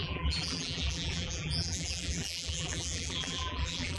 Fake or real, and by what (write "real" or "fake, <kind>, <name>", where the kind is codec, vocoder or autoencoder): fake, vocoder, BigVGAN v2